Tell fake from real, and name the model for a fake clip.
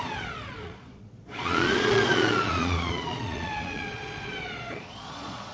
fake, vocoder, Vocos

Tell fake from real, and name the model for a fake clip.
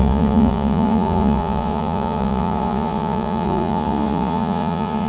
fake, vocoder, Vocos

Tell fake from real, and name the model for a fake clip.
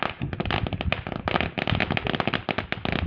real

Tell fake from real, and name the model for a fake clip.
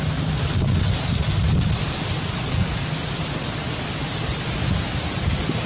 real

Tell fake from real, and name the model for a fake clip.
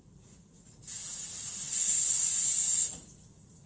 fake, vocoder, Vocos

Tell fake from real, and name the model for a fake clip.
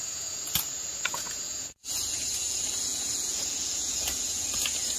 fake, vocoder, Vocos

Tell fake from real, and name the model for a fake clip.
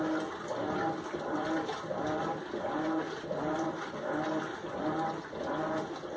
real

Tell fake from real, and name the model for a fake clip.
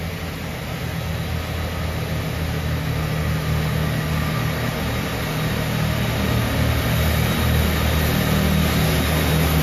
real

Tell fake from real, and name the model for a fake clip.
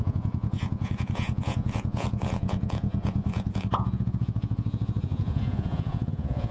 fake, vocoder, Vocos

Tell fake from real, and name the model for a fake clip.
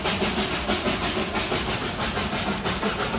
real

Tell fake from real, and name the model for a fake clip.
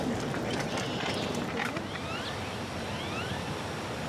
real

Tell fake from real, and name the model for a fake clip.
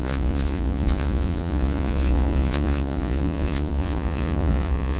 fake, vocoder, Vocos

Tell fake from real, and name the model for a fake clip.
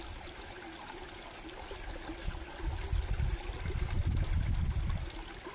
real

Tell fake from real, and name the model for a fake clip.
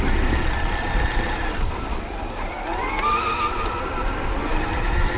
real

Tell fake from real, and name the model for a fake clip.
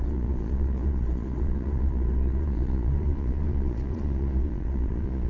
fake, vocoder, Vocos